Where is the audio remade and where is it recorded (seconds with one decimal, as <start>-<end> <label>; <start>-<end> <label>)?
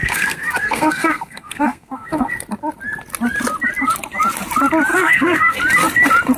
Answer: 0.0-2.3 remade; 2.3-4.9 recorded; 4.9-5.6 remade; 5.6-6.4 recorded